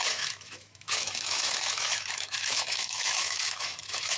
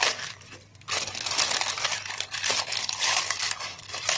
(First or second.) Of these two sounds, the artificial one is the first